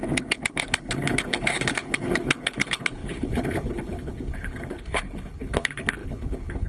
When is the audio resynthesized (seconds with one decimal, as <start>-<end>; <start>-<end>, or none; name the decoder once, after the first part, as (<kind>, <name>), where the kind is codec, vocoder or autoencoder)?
0.0-6.7 (codec, HILCodec)